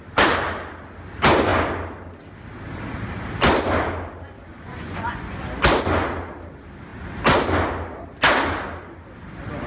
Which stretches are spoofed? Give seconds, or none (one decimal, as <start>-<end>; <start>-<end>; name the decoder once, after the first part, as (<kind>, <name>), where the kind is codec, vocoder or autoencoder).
4.5-5.4 (vocoder, Vocos)